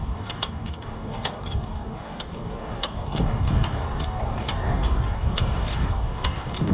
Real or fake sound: fake